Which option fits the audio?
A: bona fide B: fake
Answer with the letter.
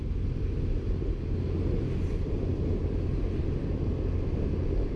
A